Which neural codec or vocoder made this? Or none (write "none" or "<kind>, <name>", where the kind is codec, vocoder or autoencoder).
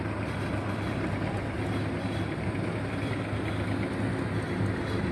none